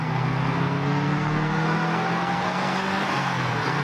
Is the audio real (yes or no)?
no